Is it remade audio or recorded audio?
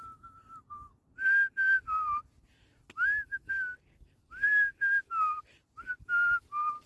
recorded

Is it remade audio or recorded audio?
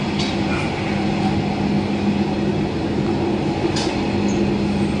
recorded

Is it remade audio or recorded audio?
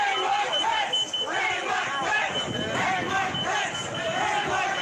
recorded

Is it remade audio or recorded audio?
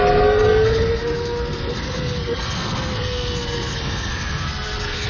remade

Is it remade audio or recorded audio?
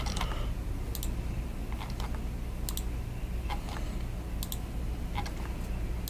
recorded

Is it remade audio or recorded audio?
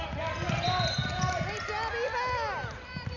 recorded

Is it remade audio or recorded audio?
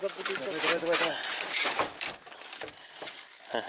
recorded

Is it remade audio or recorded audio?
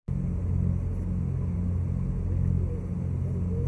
recorded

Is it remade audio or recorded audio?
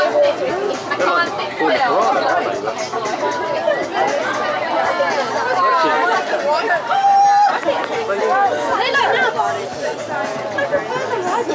recorded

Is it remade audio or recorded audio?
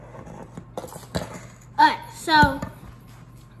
recorded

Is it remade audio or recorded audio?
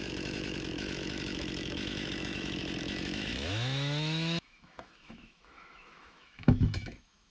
remade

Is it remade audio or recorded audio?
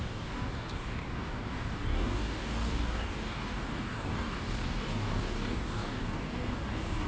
remade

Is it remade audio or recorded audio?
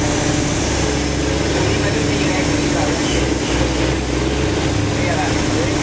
recorded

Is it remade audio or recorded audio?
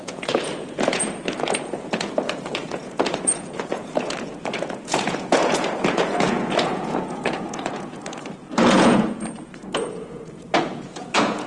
remade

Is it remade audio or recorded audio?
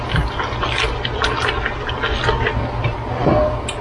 recorded